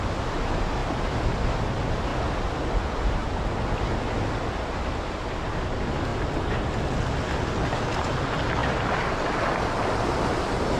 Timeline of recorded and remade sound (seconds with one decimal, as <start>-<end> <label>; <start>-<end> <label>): 0.0-10.8 recorded